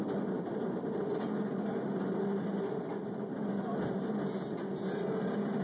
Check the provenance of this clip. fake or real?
real